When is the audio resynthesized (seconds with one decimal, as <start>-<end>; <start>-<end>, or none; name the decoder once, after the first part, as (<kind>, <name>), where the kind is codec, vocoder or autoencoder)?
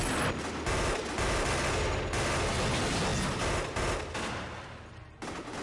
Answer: none